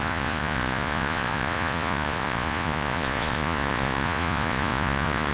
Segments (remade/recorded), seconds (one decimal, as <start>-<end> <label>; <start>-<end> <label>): 0.0-5.3 remade